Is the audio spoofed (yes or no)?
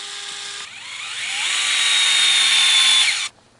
no